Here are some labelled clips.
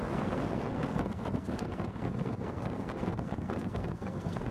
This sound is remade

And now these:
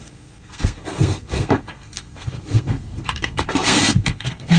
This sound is remade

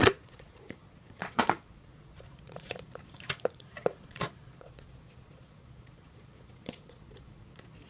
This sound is remade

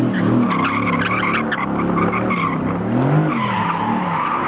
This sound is recorded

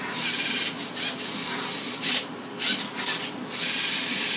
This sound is recorded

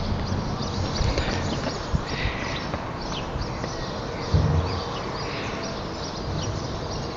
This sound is recorded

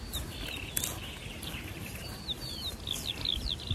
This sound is recorded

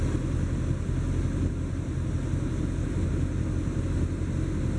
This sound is recorded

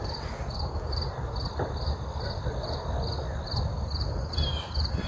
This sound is recorded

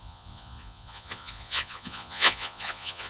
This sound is remade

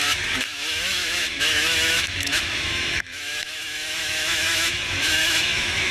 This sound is remade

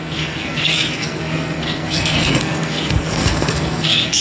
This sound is remade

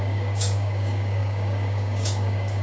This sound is remade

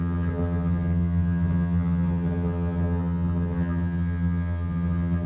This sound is remade